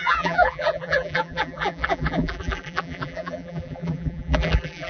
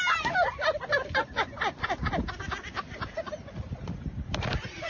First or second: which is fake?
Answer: first